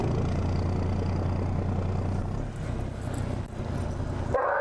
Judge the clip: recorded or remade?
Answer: recorded